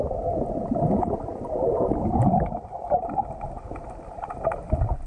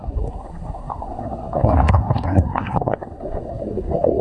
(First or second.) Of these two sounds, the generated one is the second